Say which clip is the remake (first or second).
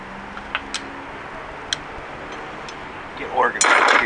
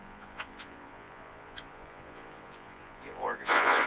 second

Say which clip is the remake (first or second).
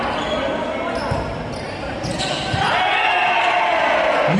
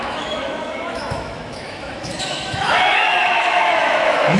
second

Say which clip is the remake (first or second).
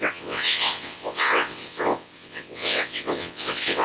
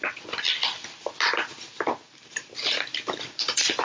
first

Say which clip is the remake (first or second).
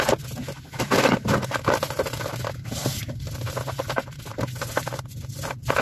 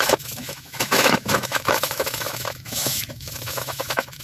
second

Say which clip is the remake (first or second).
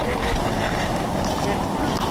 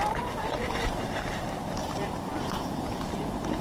second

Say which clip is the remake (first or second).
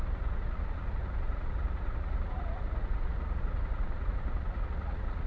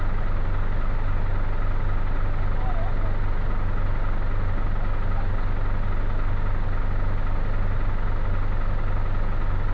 first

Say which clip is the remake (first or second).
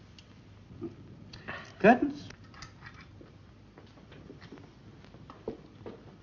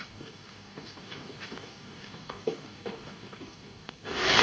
second